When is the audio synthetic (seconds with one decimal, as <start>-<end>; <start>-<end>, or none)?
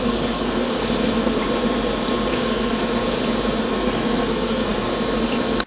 0.0-1.4; 2.3-3.0; 3.6-4.9